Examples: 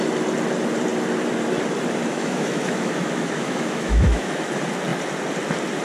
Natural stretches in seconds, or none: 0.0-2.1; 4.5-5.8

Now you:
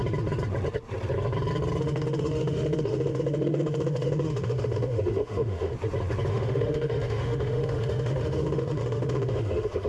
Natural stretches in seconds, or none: 0.0-1.8; 5.7-6.3

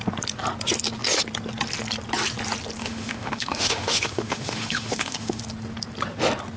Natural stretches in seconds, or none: 0.0-2.8; 5.4-6.6

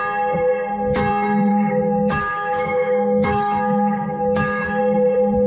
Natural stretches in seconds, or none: 0.0-1.5; 4.8-5.5

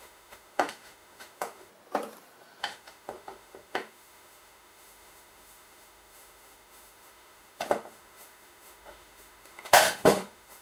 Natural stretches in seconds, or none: 1.7-2.6

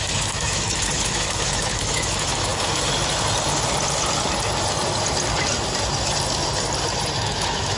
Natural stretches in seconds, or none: 2.5-7.2

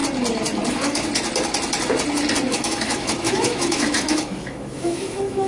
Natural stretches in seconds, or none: 0.0-0.7; 1.1-2.5